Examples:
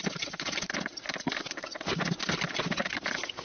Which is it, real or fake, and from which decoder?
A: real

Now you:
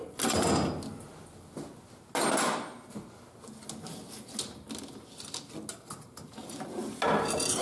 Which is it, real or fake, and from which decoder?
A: real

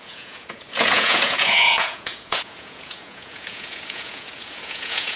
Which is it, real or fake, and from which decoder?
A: fake, vocoder, Vocos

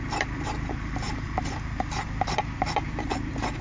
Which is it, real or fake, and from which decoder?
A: real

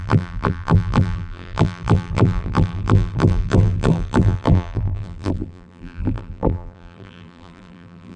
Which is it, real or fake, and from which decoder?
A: fake, vocoder, BigVGAN v2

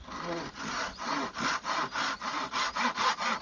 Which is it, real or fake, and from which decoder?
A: real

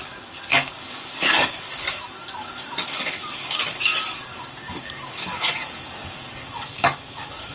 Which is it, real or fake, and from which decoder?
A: fake, codec, DAC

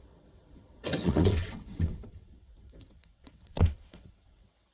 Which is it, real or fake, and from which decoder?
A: fake, vocoder, WaveNeXt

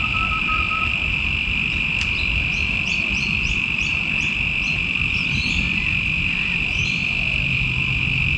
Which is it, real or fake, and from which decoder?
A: fake, vocoder, BigVGAN v2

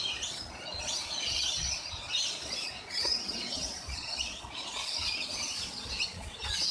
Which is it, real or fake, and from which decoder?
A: fake, vocoder, Vocos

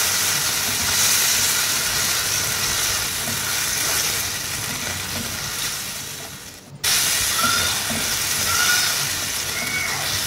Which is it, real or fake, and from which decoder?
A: real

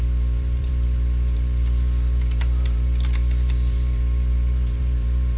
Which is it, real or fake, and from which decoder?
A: fake, vocoder, BigVGAN v2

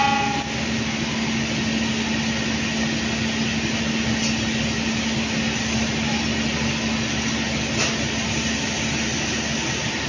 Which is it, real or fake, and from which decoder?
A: real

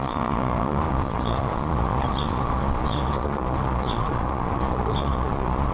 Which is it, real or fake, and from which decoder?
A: fake, vocoder, Vocos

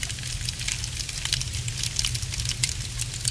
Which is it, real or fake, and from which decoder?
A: real